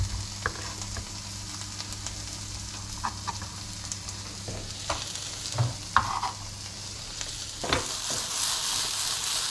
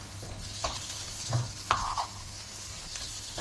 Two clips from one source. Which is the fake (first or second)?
second